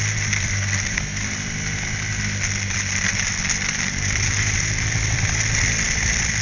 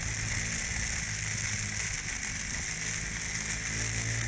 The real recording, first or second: second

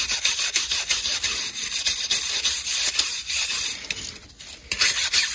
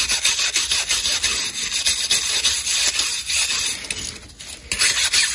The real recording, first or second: second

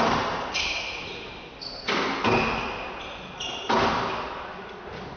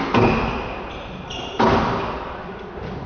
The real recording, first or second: first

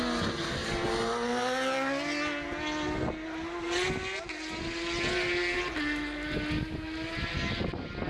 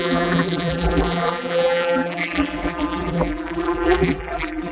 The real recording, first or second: first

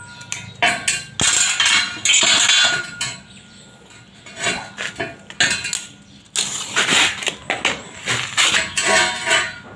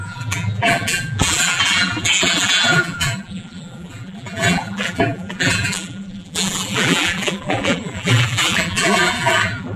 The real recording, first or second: first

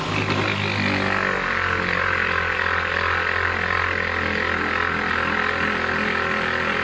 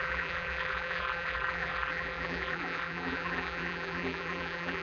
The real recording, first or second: first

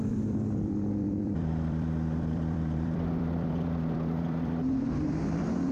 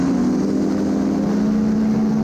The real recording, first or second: second